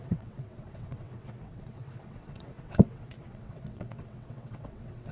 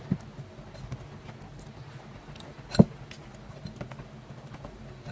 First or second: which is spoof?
first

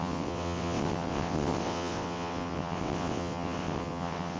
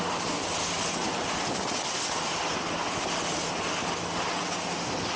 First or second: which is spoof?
first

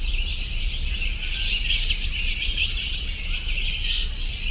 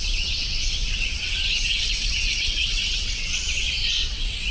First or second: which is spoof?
second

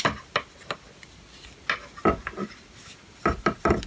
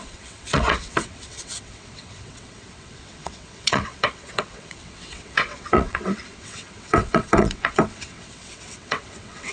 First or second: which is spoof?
second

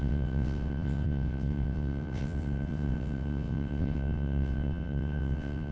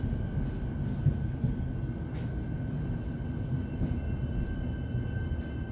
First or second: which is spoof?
first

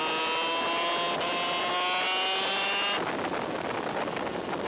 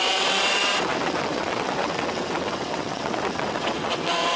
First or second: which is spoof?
second